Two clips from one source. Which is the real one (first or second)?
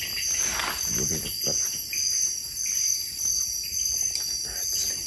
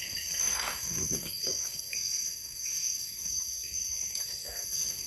first